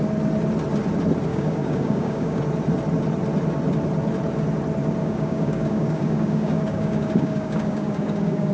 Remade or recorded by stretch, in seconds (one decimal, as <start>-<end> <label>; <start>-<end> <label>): 0.0-1.3 recorded; 1.3-2.4 remade; 2.4-5.0 recorded; 5.0-8.5 remade